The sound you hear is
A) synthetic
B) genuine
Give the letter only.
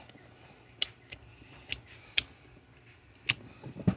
B